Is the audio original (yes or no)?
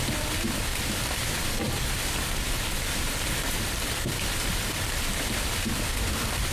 no